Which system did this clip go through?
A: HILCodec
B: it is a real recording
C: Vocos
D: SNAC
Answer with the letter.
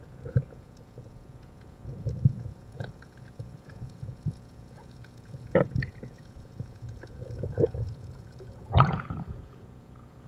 C